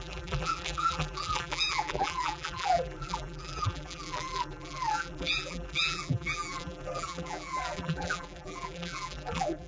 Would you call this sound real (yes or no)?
no